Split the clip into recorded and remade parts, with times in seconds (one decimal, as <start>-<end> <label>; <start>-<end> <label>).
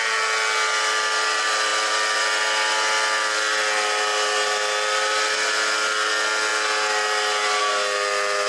0.0-8.5 recorded